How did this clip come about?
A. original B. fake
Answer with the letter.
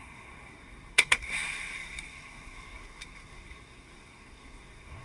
B